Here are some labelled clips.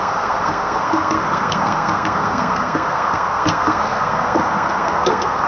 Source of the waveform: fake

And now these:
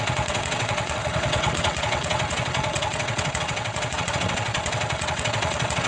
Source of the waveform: fake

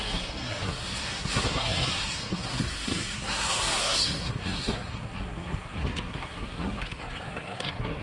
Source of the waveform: fake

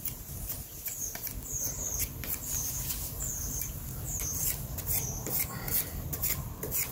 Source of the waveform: fake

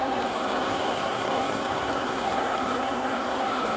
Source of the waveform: fake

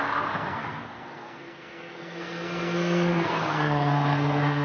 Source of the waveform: fake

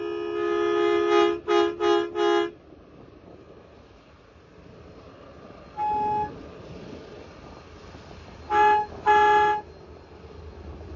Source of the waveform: real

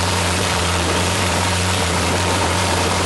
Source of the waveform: fake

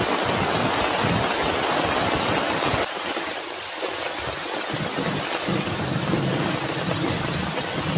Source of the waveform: real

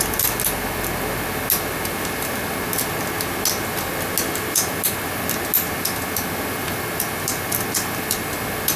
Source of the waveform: real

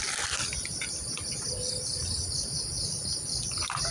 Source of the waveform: real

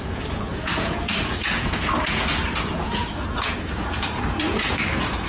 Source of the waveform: fake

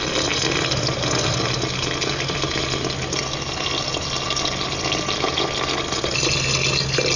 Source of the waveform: real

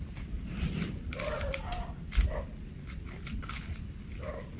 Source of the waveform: real